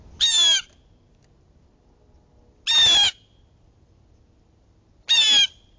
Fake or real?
real